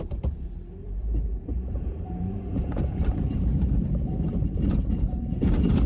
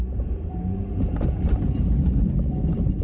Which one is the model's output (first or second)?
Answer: first